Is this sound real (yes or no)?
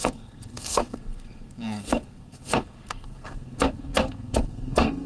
no